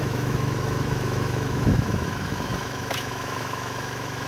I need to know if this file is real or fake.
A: fake